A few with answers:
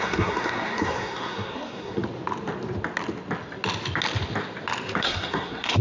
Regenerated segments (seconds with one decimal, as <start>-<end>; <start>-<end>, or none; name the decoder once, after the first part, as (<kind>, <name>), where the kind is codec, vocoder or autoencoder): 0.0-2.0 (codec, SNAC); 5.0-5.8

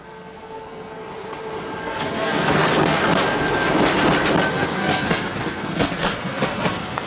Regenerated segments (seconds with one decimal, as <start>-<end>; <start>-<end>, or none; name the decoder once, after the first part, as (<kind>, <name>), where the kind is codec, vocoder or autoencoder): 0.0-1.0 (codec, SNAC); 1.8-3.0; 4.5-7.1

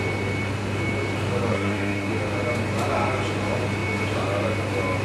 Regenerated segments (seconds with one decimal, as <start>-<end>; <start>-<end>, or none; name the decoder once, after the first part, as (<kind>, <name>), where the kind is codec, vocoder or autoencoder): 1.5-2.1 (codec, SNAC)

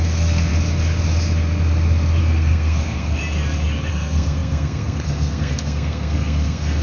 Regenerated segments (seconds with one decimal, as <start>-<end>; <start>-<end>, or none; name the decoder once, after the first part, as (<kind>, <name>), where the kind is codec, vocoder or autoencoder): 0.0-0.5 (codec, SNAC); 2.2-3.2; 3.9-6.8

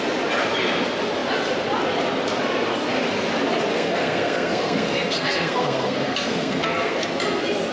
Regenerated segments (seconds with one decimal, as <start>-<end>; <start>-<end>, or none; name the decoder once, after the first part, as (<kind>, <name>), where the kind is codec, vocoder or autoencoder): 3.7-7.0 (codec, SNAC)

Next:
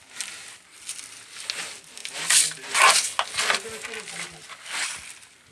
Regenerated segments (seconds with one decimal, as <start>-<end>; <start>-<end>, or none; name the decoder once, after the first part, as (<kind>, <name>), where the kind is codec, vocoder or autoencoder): none

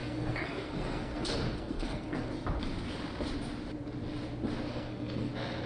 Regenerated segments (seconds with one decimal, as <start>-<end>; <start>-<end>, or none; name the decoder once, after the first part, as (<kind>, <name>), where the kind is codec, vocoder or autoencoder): 0.0-2.3 (codec, SNAC); 4.7-5.3